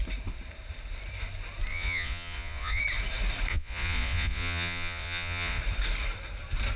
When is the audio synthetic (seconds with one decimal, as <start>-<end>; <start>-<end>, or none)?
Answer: 1.7-2.8; 3.5-5.6